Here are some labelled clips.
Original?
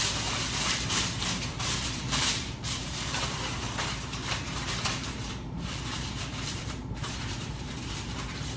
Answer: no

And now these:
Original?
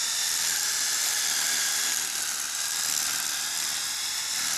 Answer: yes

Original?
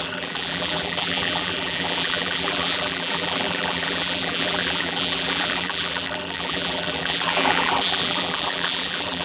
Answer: no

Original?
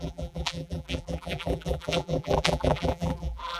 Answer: no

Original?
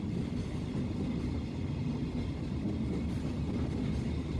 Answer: yes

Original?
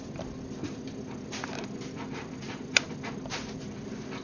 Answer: yes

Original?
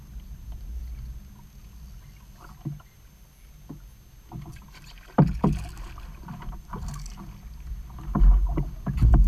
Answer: yes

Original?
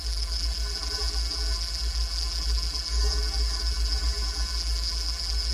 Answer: no